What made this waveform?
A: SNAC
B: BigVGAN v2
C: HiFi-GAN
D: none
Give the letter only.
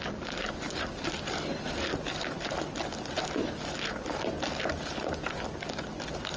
D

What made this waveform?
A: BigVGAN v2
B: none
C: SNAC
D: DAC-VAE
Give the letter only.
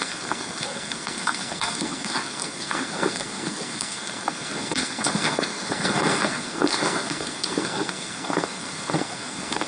C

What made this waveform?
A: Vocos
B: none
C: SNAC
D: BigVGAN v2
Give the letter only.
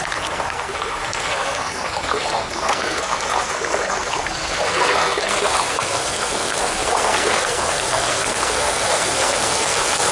C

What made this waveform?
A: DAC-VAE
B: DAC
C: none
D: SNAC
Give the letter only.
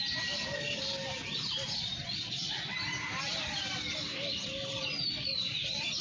C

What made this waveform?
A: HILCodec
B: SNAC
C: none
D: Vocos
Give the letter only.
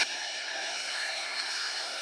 B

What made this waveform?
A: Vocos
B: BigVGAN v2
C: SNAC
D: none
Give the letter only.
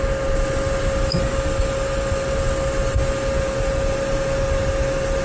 D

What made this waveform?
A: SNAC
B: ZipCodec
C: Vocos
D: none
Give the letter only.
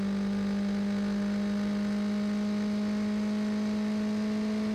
D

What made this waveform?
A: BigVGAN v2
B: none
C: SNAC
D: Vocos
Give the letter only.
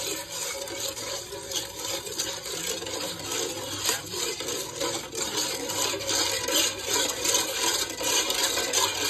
B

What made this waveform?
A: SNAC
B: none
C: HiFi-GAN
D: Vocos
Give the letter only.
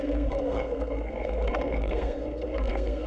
A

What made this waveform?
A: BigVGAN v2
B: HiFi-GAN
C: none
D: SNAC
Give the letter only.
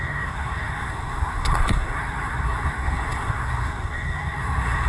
D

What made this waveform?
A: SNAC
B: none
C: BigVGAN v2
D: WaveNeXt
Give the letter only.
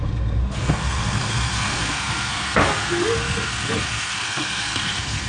A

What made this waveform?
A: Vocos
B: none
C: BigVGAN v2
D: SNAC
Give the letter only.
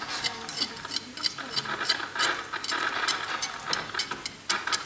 B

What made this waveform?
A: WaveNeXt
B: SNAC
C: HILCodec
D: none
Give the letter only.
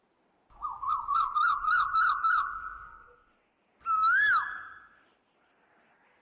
D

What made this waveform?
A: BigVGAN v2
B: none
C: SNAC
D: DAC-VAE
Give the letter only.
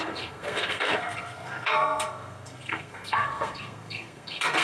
C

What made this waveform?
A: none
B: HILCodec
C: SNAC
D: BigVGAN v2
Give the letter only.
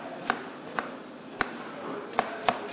A